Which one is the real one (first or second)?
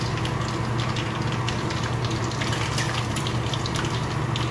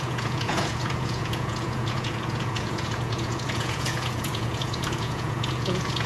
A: first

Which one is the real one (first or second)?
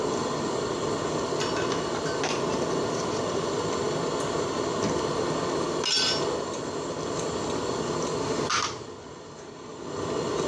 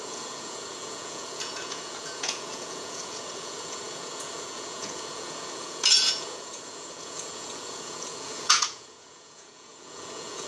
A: first